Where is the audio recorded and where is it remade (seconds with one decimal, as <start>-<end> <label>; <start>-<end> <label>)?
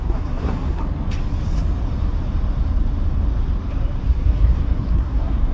0.0-0.8 remade; 0.8-4.1 recorded; 4.1-5.5 remade